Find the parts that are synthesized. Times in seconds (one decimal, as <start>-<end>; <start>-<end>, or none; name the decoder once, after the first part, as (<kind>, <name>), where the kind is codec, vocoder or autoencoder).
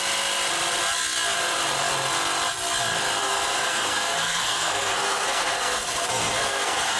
3.2-7.0 (codec, SNAC)